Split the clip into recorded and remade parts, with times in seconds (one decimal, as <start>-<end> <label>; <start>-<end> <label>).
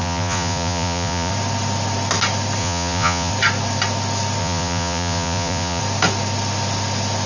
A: 0.0-1.3 remade; 1.3-2.6 recorded; 2.6-3.3 remade; 3.3-4.4 recorded; 4.4-5.8 remade; 5.8-7.3 recorded